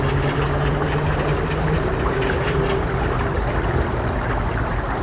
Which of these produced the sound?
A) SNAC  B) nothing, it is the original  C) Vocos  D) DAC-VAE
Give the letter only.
B